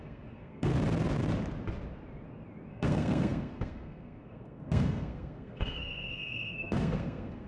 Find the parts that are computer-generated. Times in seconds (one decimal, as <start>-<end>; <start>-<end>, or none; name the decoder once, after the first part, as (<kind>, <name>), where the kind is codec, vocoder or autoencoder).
0.0-0.7 (codec, SNAC); 2.7-7.5